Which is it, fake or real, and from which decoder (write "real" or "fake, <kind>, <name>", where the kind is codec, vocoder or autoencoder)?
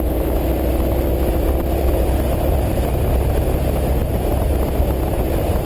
real